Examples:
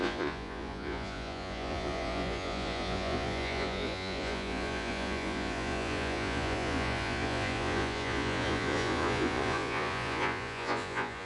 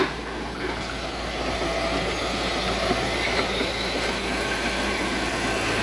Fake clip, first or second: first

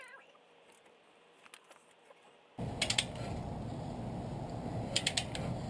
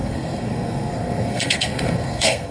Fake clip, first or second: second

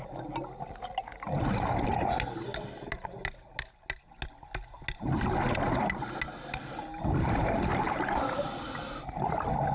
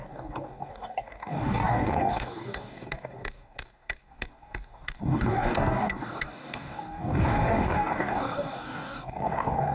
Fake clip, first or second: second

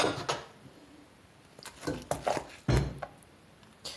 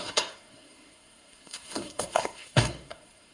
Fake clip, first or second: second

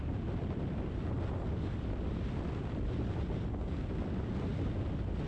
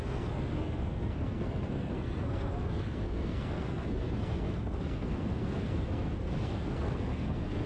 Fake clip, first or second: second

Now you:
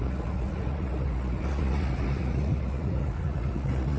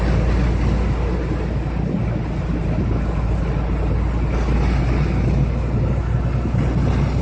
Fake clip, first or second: first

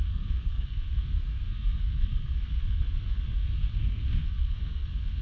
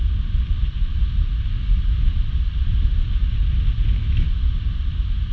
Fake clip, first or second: first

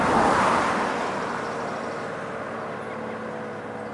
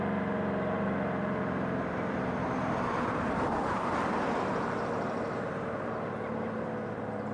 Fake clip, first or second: second